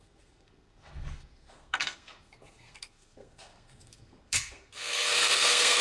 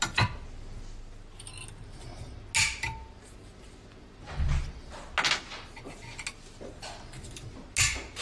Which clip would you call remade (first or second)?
first